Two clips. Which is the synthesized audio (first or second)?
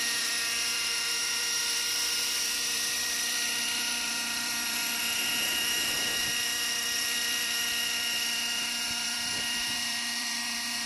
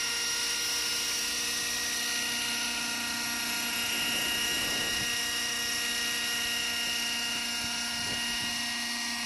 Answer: first